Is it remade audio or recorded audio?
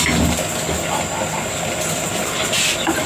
recorded